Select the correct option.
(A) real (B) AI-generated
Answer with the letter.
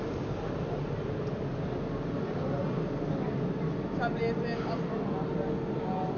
A